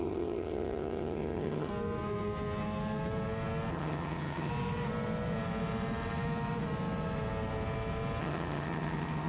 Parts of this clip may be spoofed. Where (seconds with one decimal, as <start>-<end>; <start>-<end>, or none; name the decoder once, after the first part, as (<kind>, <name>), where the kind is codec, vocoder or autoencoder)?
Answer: 0.0-1.7 (vocoder, HiFi-GAN); 3.7-4.5; 8.2-9.3